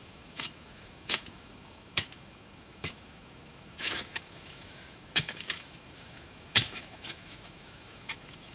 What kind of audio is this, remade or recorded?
remade